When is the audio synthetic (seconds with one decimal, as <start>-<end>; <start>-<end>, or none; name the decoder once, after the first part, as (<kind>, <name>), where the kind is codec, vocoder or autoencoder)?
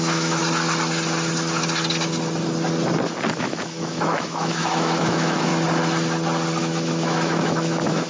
0.0-0.4 (autoencoder, DAC-VAE); 3.4-5.5; 6.6-8.1